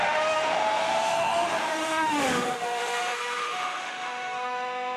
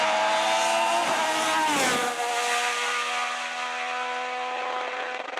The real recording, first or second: second